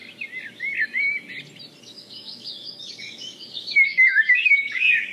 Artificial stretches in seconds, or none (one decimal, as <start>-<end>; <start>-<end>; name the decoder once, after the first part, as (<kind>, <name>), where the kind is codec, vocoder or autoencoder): 1.8-5.1 (codec, DAC)